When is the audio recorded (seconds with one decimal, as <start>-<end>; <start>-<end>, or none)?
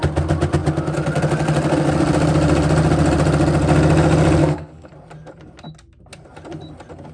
0.0-4.4; 4.9-7.1